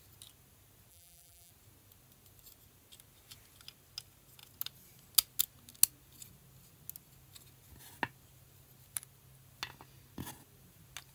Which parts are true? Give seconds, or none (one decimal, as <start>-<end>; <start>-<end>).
0.0-0.9; 1.5-11.1